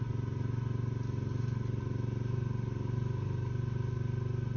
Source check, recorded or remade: recorded